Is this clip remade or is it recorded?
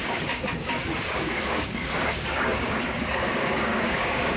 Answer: remade